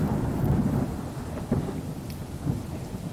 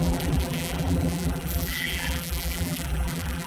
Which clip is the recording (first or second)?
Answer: first